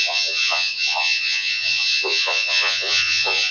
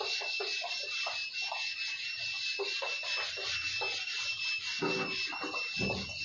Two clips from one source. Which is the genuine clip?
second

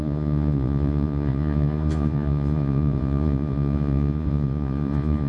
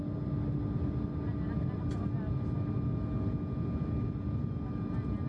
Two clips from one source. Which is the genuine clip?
second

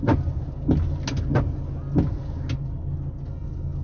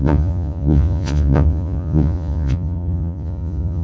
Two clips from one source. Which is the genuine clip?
first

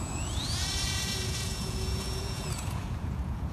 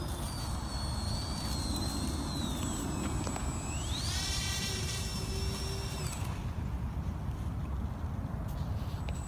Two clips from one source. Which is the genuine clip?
second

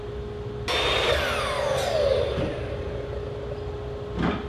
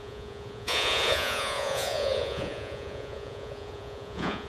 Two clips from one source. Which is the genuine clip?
first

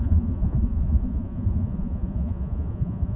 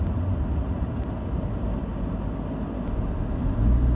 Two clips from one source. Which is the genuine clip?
second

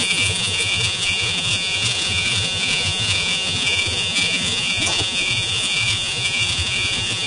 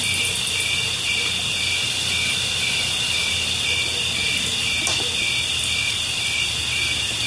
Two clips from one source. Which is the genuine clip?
second